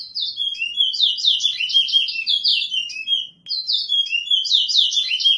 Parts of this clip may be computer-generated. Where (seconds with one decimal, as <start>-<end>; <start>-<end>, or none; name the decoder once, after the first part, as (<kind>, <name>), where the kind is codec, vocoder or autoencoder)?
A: none